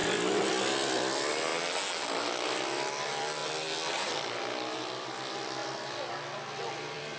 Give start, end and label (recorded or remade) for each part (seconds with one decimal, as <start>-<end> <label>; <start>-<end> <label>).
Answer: 0.0-0.6 recorded; 0.6-1.5 remade; 1.5-2.2 recorded; 2.2-7.2 remade